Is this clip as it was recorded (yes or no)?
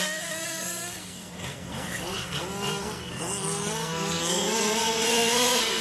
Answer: no